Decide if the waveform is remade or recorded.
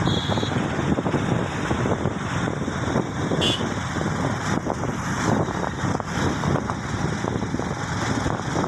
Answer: recorded